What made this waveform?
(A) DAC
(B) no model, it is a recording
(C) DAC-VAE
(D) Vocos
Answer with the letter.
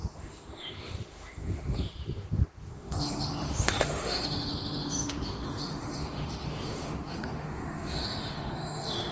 C